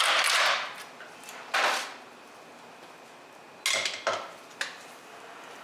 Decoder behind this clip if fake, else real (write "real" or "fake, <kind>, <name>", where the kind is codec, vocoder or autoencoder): real